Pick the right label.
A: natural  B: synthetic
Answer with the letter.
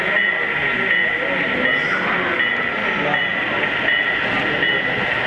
A